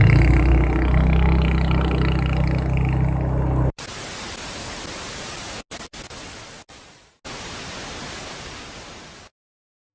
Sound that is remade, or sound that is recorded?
recorded